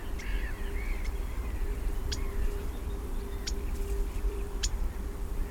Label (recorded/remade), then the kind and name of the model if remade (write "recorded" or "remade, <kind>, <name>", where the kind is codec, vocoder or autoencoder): remade, vocoder, BigVGAN v2